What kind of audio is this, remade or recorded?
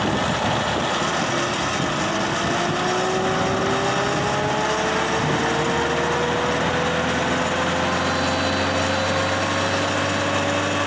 recorded